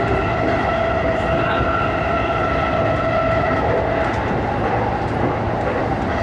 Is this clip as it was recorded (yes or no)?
yes